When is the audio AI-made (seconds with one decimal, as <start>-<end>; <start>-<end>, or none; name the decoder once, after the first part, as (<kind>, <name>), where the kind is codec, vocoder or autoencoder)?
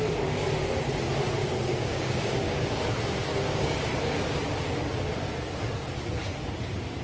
1.4-2.7 (codec, DAC); 3.3-3.8